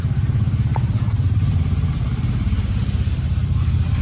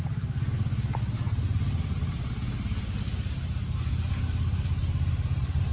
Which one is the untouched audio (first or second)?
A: second